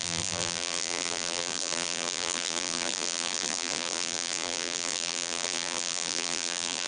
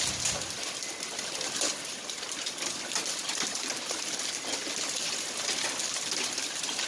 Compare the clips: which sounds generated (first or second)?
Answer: first